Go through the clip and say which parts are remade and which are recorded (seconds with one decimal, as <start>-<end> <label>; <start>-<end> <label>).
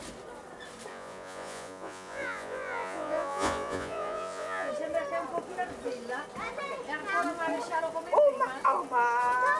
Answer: 0.0-0.9 recorded; 0.9-4.7 remade; 4.7-9.6 recorded